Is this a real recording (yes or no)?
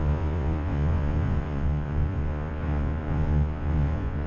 no